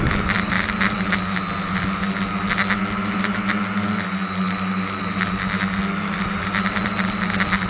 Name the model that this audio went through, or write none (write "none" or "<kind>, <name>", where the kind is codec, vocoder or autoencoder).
none